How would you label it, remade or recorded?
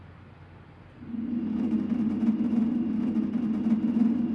recorded